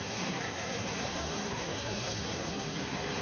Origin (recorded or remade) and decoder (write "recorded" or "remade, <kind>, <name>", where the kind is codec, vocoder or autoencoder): remade, codec, SNAC